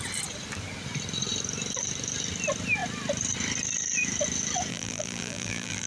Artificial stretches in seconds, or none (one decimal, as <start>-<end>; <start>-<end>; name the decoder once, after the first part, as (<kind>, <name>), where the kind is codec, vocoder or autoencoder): 4.7-5.9 (vocoder, BigVGAN v2)